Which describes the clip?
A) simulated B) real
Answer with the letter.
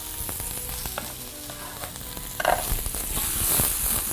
B